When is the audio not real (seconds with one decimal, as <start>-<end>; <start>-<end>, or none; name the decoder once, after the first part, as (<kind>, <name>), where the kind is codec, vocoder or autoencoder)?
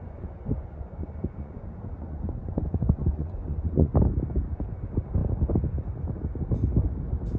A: 0.0-3.9 (vocoder, Vocos)